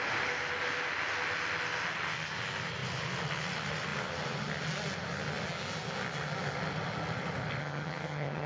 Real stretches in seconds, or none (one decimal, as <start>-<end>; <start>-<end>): 0.0-7.6